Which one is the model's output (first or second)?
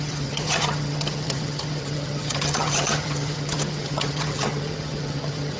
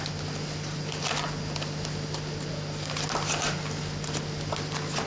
first